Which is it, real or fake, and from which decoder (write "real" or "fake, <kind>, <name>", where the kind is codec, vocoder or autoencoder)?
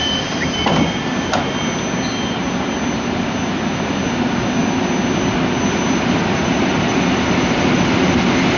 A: real